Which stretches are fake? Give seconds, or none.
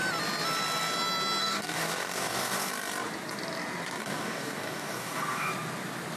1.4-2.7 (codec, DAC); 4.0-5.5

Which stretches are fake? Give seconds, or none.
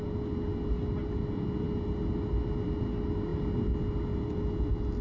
none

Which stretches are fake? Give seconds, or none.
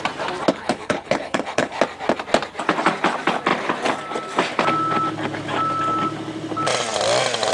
0.5-1.8 (codec, HILCodec)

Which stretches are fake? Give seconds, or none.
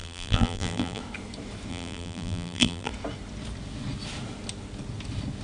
0.0-1.0 (vocoder, BigVGAN v2); 1.7-2.9